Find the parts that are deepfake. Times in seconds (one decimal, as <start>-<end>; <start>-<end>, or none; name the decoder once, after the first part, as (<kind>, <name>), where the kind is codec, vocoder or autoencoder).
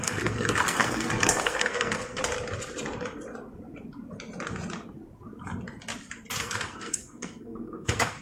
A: 0.0-2.2 (codec, SNAC); 6.4-8.2